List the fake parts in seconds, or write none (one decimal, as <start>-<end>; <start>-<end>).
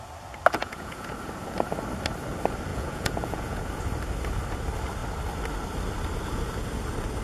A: 0.6-1.1; 2.7-3.6